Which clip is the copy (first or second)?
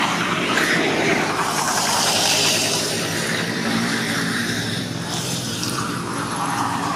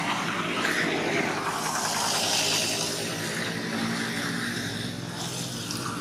first